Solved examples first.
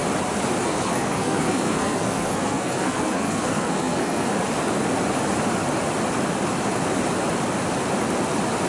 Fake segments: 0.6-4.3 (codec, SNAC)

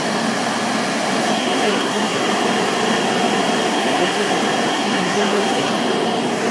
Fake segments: 1.2-2.2 (codec, SNAC); 3.7-4.3; 4.7-5.7

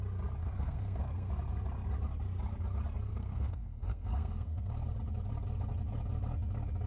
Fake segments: 0.4-1.3 (codec, SNAC); 3.1-4.7

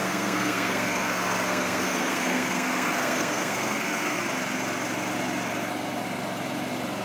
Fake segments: 0.0-4.2 (codec, SNAC)

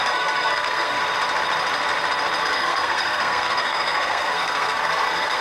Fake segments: 0.0-1.0 (codec, SNAC); 2.4-5.4

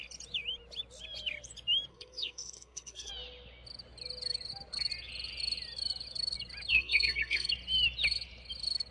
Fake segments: 1.9-3.1 (codec, SNAC); 6.7-7.5

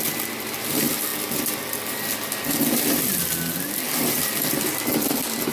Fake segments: none

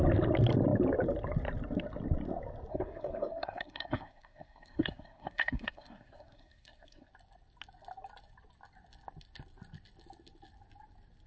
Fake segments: 2.7-7.1 (codec, SNAC)